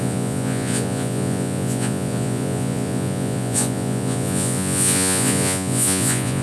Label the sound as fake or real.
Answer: fake